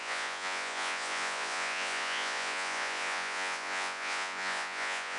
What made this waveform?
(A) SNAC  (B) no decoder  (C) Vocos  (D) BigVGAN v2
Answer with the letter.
C